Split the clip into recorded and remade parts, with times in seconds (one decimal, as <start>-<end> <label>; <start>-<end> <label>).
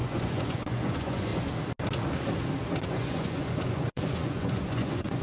0.0-1.3 remade; 1.3-2.8 recorded; 2.8-5.2 remade